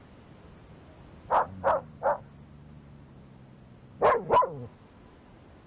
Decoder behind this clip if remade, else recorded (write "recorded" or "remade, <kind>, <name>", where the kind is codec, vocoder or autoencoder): recorded